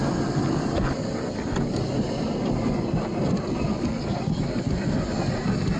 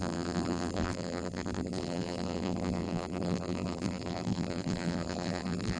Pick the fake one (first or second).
second